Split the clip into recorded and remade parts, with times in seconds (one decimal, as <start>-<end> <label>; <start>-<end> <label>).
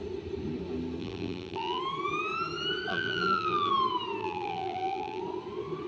0.0-1.0 recorded; 1.0-1.8 remade; 1.8-2.9 recorded; 2.9-3.7 remade; 3.7-4.2 recorded; 4.2-5.2 remade; 5.2-5.9 recorded